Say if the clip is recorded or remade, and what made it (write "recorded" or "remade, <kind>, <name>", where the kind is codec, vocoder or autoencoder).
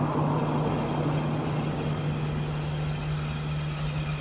recorded